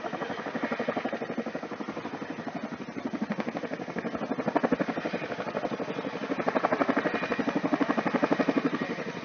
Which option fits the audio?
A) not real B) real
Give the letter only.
B